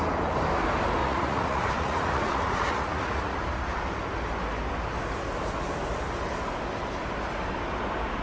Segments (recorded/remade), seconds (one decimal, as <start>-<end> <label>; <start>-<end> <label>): 0.0-1.0 recorded; 1.0-3.4 remade; 3.4-8.2 recorded